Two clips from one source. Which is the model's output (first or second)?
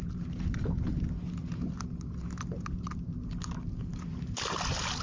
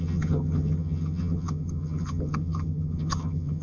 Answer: second